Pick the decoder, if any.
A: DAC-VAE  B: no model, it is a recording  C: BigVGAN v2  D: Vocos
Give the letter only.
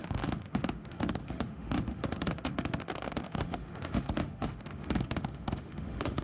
A